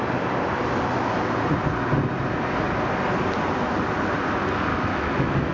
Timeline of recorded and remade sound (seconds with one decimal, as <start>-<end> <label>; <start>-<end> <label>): 0.0-4.7 recorded; 4.7-5.5 remade